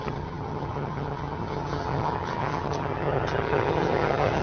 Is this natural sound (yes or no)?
no